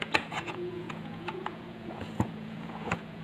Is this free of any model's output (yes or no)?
no